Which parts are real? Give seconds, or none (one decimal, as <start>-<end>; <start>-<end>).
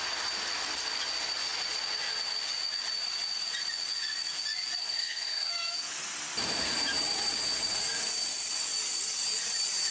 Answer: 0.0-4.8; 5.5-9.9